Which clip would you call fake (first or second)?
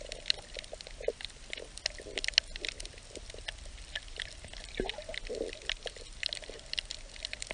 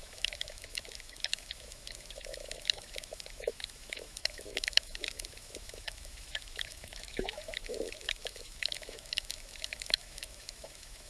second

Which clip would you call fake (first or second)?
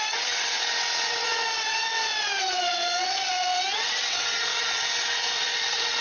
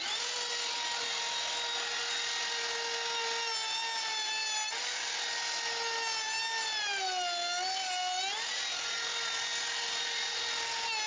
first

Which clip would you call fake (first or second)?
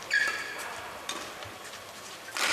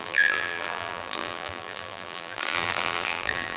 second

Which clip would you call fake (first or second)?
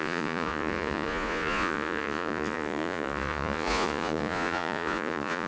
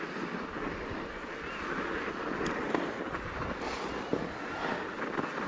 first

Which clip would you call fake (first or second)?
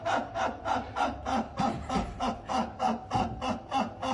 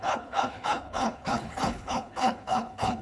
second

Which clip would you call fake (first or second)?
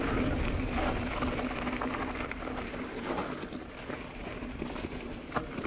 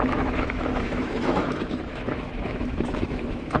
second